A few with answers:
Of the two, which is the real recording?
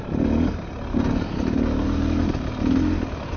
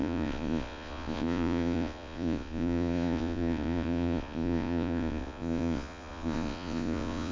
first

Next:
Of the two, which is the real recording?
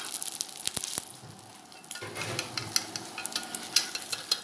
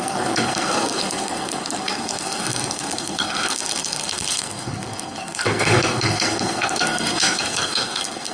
first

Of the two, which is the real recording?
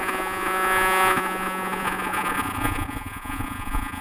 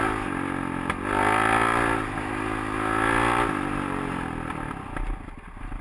second